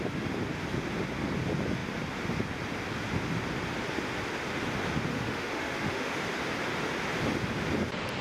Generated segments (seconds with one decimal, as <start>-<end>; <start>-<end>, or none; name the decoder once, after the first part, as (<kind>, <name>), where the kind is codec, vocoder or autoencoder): 5.1-6.1 (autoencoder, DAC-VAE)